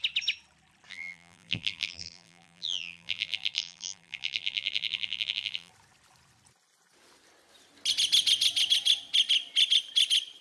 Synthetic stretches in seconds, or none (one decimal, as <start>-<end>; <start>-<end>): 0.9-5.7